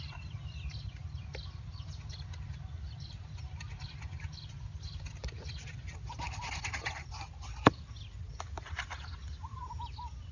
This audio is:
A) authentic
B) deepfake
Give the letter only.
A